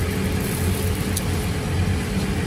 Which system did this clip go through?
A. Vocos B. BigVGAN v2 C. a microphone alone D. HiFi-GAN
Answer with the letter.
C